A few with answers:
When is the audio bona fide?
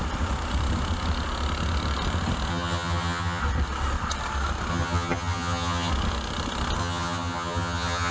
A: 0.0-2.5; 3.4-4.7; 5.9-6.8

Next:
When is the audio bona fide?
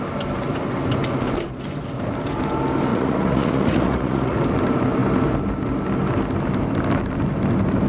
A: 0.0-2.9; 4.4-7.9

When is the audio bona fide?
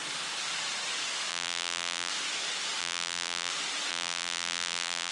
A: 0.0-1.3; 2.1-2.8; 3.5-3.9